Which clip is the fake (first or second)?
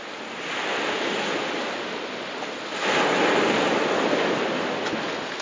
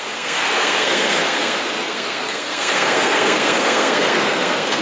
second